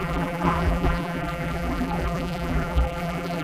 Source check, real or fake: fake